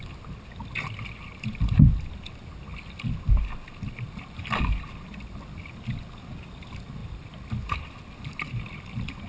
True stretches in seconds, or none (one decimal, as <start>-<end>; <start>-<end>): 0.0-9.3

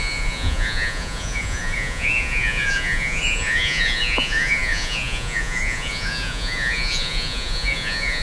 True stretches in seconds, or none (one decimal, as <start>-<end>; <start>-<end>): none

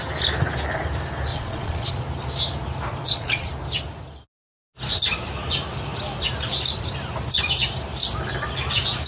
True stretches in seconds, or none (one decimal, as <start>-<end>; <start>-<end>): 0.0-1.3; 1.9-3.0; 3.5-9.1

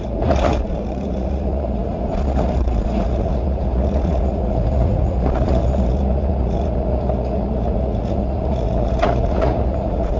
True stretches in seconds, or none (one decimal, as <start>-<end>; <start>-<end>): none

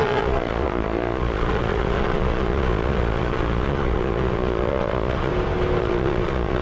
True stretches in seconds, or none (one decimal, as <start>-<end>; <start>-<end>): 5.3-5.8

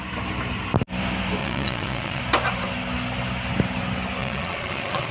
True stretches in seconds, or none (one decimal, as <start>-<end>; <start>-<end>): 0.0-1.4; 2.2-4.2

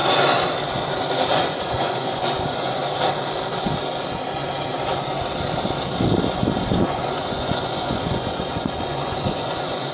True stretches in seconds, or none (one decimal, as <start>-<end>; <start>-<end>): 0.0-1.3; 2.8-6.6